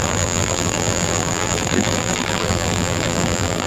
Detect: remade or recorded remade